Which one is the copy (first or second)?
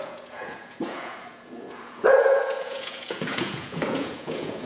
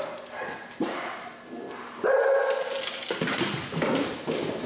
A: first